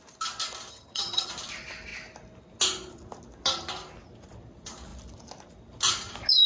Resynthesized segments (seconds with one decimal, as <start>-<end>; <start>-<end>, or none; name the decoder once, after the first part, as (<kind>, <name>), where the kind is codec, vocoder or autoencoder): 0.7-1.3 (vocoder, HiFi-GAN)